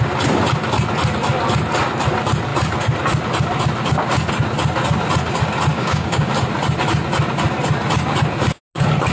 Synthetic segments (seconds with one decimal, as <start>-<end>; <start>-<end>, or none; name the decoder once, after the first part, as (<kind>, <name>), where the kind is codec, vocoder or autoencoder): 5.7-6.3 (codec, DAC)